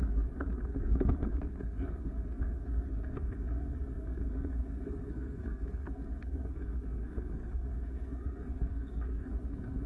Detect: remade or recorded remade